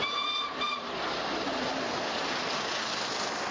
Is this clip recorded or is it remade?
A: recorded